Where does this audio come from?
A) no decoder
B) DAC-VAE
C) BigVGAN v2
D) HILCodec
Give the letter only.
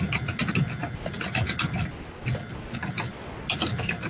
A